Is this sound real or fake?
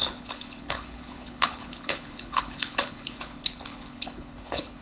fake